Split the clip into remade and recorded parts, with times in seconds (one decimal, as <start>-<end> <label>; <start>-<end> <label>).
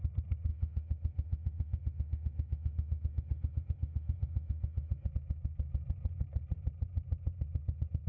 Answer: 0.0-0.5 recorded; 0.5-5.1 remade; 5.1-8.1 recorded